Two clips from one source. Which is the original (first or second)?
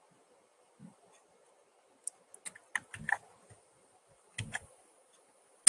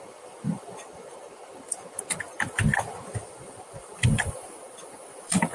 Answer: first